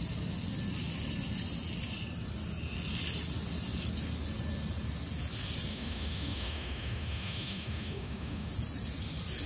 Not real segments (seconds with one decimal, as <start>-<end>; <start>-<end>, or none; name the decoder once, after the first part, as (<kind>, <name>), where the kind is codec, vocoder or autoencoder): 5.7-8.5 (autoencoder, DAC-VAE)